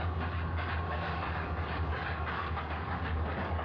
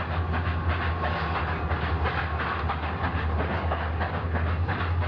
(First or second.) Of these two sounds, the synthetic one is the first